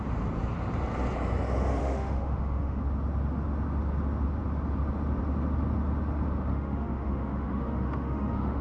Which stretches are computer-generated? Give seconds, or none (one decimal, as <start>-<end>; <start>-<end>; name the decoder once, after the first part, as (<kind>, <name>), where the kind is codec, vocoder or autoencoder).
1.8-2.8 (autoencoder, DAC-VAE); 6.5-8.6